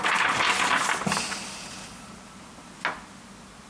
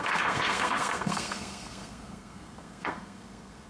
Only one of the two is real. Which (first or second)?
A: first